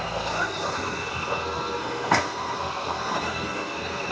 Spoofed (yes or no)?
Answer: yes